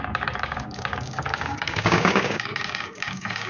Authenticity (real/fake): fake